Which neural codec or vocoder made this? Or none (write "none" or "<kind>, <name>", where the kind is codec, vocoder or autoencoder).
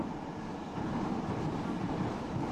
none